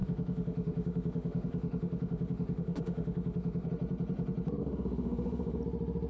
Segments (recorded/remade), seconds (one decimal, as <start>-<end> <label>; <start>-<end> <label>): 0.0-3.7 remade; 3.7-4.6 recorded; 4.6-5.6 remade; 5.6-6.1 recorded